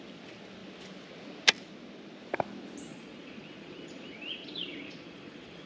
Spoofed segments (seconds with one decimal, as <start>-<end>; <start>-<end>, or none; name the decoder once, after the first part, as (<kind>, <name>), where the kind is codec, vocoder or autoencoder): 2.9-5.7 (vocoder, Vocos)